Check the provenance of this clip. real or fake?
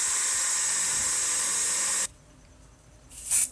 real